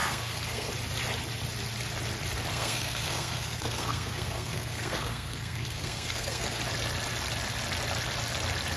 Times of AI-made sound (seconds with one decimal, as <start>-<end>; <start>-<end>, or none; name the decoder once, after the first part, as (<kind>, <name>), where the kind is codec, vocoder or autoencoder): 0.0-0.7 (codec, SNAC); 2.5-6.6